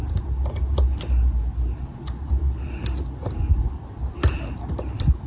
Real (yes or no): yes